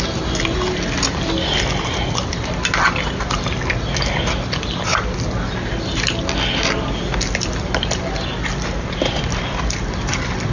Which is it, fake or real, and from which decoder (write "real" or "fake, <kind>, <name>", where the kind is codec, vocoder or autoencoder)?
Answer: real